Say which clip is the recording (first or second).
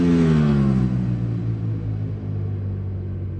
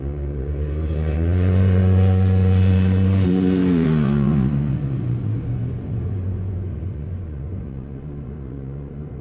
first